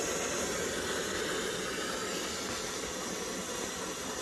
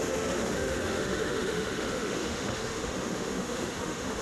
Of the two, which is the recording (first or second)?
first